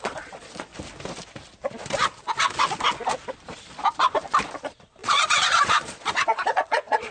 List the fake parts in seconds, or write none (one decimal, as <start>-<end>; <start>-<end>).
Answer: 0.0-0.7; 4.6-7.1